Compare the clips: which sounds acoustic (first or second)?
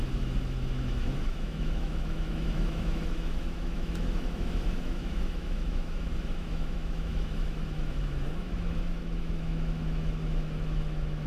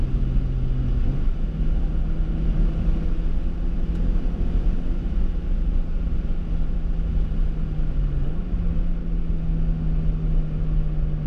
second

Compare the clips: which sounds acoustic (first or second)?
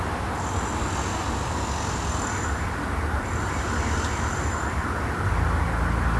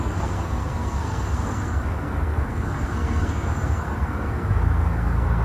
first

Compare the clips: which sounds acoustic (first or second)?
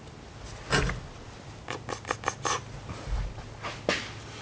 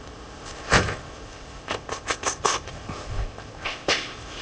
first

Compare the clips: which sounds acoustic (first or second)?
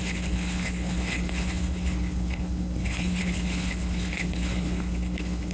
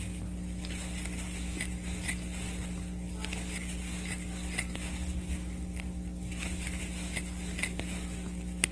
second